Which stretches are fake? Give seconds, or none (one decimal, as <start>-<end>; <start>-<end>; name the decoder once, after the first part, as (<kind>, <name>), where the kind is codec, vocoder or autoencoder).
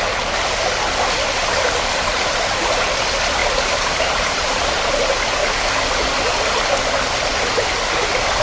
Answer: 3.4-4.7 (vocoder, BigVGAN v2); 5.4-6.6